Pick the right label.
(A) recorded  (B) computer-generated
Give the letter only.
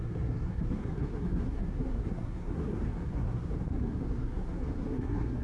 B